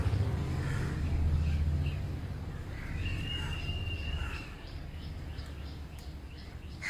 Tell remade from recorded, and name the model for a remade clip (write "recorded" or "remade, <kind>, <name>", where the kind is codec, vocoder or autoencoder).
remade, codec, DAC